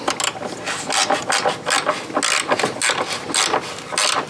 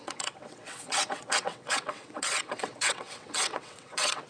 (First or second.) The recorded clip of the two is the first